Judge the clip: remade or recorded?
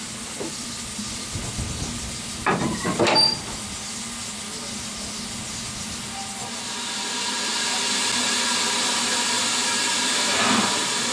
recorded